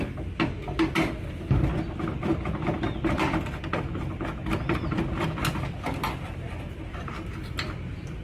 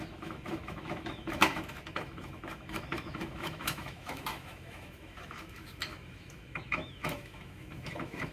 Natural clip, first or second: first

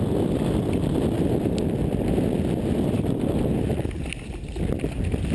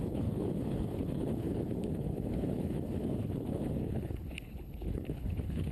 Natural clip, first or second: first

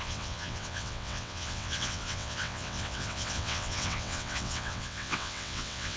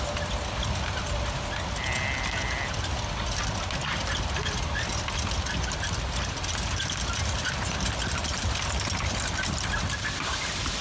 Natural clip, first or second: second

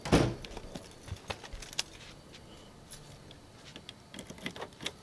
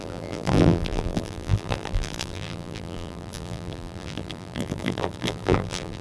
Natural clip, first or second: first